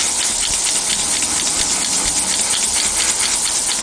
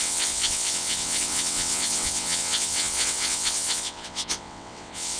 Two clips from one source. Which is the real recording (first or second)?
first